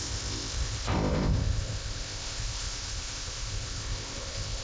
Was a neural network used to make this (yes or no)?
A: yes